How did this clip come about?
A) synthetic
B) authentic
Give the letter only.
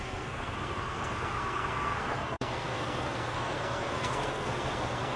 A